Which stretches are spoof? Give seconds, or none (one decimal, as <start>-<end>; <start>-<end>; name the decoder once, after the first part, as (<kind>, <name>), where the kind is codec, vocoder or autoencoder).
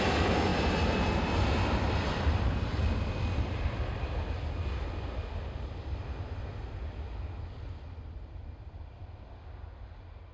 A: none